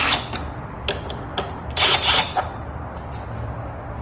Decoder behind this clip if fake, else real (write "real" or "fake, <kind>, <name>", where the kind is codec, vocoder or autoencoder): real